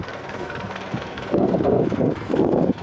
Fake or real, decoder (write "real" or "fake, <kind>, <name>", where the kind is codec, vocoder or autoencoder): fake, codec, SNAC